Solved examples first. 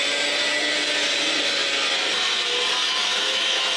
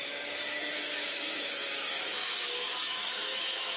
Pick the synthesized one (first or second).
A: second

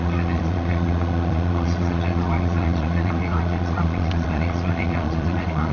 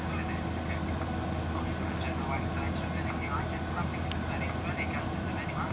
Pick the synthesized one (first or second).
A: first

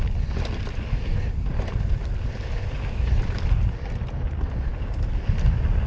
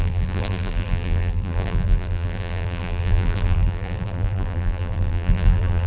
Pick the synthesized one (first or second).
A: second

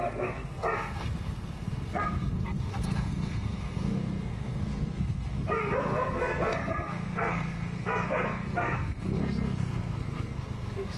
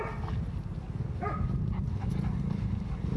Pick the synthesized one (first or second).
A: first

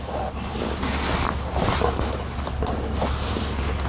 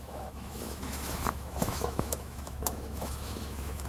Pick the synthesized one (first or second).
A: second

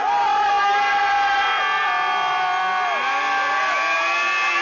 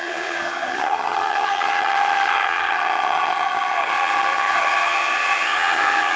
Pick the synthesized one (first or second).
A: second